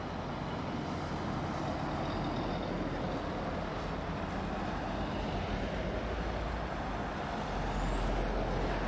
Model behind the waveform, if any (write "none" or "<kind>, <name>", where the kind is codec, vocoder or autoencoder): none